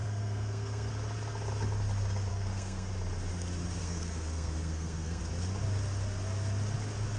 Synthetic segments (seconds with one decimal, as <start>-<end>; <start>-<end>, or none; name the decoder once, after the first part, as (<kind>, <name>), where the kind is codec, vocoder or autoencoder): 0.0-0.9 (codec, SNAC); 2.3-2.9; 3.8-5.2